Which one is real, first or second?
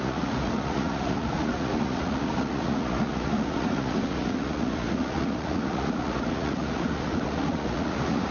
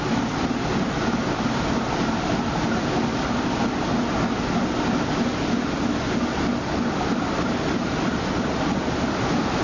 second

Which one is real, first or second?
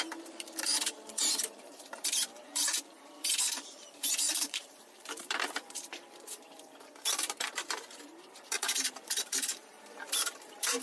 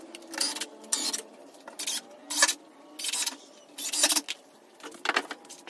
second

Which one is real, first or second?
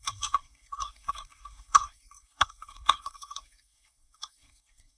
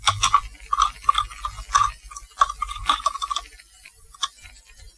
second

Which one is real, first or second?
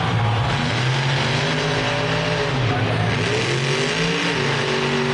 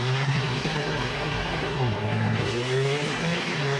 first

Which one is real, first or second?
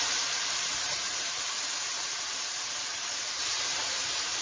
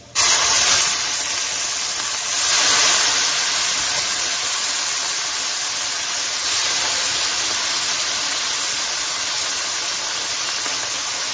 second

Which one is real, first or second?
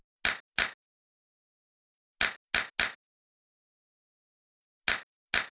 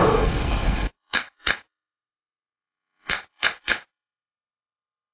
first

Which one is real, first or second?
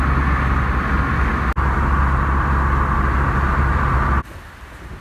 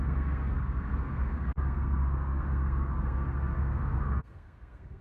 first